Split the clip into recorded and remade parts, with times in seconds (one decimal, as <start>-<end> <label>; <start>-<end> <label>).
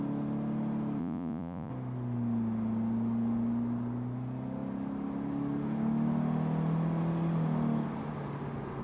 0.0-1.0 recorded; 1.0-1.7 remade; 1.7-8.8 recorded